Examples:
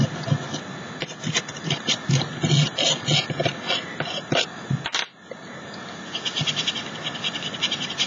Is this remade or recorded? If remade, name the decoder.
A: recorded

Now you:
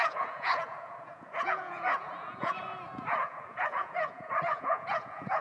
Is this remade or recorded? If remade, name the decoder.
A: remade, vocoder, Vocos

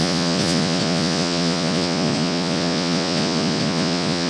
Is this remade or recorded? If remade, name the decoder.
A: remade, vocoder, Vocos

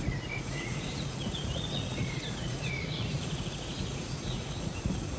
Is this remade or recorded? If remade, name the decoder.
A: remade, vocoder, Vocos